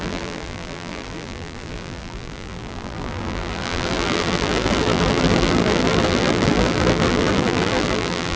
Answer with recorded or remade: remade